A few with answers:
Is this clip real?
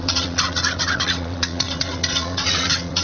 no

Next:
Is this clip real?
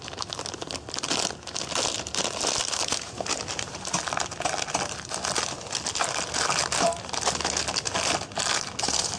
yes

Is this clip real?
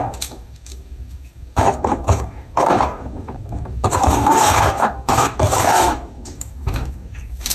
no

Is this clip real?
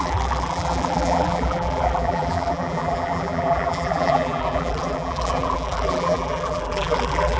no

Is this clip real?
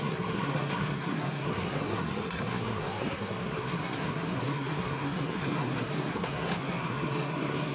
no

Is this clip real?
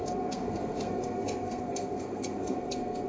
no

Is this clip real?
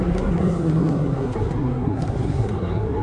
no